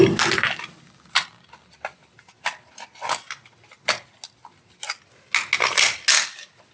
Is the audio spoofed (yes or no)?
no